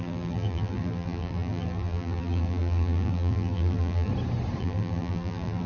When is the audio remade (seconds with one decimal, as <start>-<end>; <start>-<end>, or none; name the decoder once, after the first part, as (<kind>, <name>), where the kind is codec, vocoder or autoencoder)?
0.0-4.1 (vocoder, BigVGAN v2); 4.6-5.7